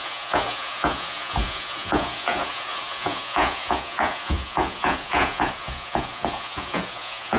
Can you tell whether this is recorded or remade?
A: remade